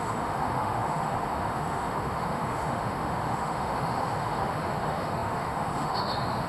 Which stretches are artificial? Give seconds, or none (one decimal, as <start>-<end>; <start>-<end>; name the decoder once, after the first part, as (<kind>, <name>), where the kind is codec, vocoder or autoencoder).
0.0-6.5 (autoencoder, DAC-VAE)